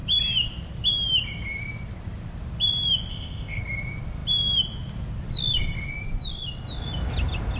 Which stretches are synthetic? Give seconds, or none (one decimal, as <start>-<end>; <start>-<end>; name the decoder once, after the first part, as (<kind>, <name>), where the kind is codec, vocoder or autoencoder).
3.1-3.6 (codec, ZipCodec)